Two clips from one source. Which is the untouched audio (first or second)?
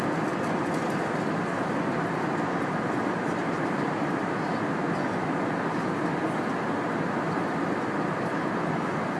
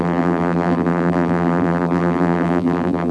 first